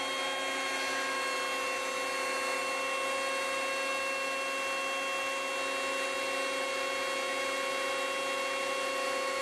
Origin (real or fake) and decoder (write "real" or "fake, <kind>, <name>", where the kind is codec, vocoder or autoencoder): real